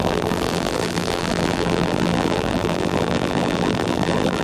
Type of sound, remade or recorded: remade